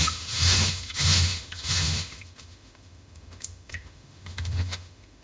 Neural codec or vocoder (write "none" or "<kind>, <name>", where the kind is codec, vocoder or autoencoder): autoencoder, DAC-VAE